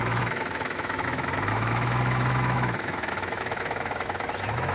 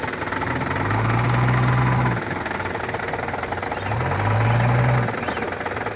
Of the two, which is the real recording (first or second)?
second